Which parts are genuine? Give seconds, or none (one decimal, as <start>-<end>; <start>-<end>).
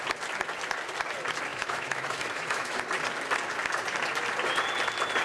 0.0-1.5; 2.8-5.2